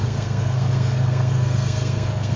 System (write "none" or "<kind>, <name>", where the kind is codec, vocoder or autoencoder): codec, SNAC